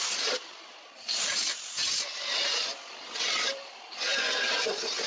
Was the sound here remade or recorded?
recorded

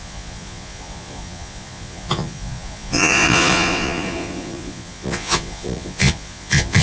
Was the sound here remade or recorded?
remade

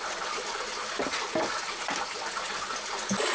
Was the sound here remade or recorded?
recorded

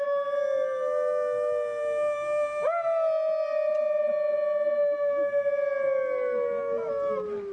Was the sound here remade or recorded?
recorded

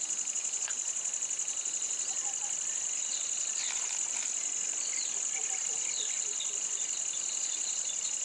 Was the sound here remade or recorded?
recorded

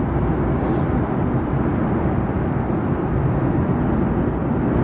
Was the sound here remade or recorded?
recorded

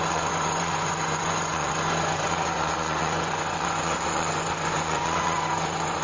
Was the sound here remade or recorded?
remade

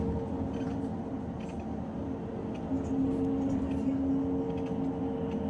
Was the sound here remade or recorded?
recorded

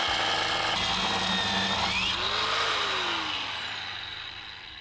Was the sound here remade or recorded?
recorded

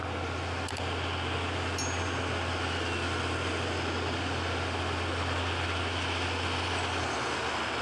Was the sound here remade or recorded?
recorded